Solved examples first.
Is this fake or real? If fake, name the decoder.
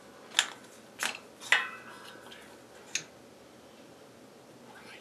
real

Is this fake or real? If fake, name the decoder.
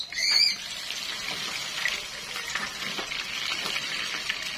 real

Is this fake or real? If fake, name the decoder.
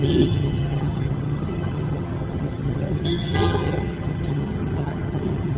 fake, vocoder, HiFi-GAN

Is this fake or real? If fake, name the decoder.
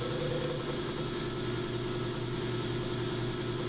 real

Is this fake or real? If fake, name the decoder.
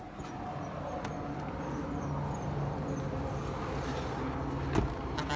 real